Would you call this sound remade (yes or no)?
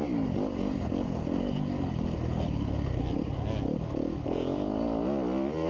no